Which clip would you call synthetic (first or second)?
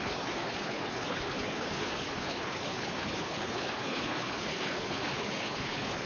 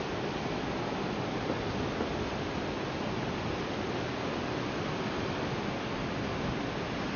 first